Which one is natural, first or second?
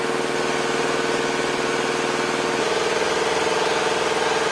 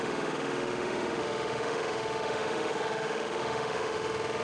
first